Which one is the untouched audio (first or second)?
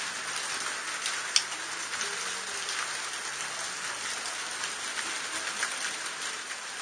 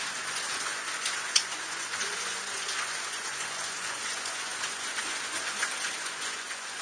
first